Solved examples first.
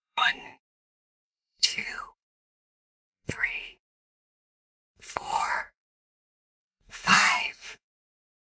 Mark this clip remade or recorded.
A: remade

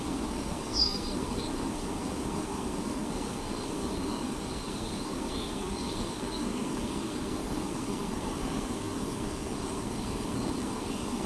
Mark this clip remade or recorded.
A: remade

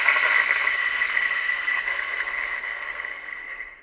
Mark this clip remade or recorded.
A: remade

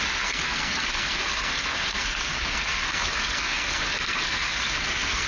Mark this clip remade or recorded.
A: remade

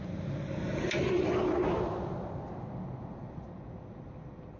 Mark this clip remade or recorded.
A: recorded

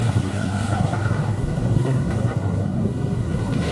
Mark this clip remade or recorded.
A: remade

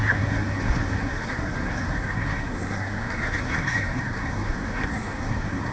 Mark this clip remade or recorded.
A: remade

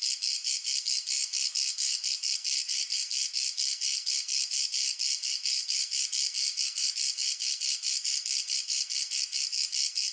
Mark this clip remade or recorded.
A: remade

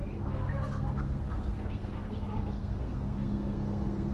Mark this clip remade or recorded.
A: remade